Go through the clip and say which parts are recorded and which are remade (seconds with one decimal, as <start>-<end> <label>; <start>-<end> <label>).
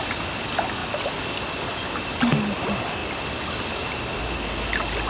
0.0-5.1 recorded